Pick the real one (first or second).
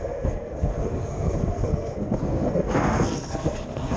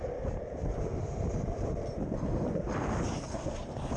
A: second